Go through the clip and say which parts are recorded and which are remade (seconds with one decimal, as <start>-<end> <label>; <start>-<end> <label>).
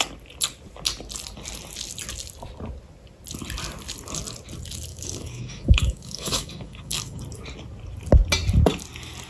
0.0-4.9 recorded; 4.9-7.2 remade; 7.2-9.3 recorded